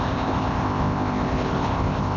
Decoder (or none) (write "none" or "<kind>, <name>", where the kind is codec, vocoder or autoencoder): codec, ZipCodec